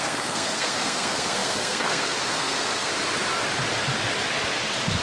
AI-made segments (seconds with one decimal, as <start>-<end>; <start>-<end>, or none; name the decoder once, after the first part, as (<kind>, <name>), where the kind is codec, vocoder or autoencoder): 0.0-2.9 (codec, SNAC)